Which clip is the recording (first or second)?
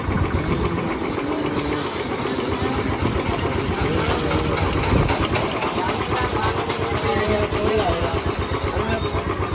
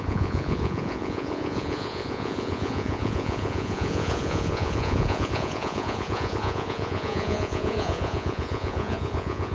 first